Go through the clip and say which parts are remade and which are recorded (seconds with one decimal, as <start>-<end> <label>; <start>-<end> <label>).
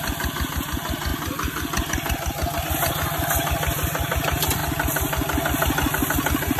0.0-4.6 remade; 4.6-6.6 recorded